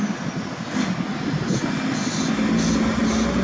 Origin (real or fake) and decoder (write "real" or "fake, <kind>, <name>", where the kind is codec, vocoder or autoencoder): real